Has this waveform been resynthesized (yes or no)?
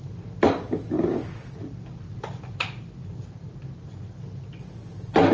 no